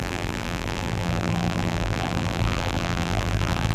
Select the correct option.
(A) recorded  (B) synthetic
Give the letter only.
B